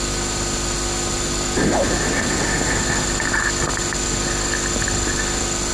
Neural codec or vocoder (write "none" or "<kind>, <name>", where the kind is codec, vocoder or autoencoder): none